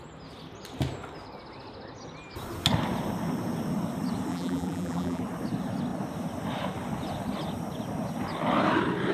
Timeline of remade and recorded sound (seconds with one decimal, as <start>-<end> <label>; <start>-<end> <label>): 0.0-4.3 recorded; 4.3-5.2 remade; 5.2-9.1 recorded